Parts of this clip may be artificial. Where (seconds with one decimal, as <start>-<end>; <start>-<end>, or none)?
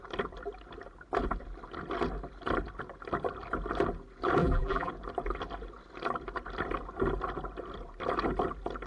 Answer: 4.4-4.9